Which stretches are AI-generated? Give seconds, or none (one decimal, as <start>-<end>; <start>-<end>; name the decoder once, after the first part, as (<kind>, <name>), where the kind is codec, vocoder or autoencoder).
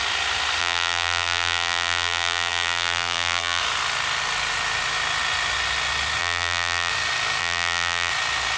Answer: 0.6-3.6 (vocoder, BigVGAN v2); 6.2-6.9; 7.4-8.1